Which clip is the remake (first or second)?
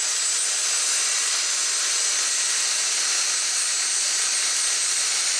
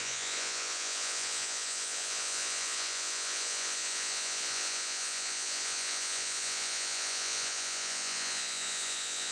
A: second